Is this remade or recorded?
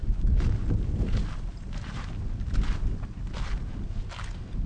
recorded